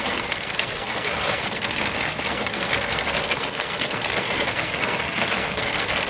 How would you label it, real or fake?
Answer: fake